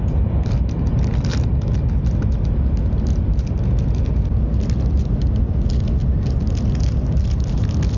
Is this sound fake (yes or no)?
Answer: no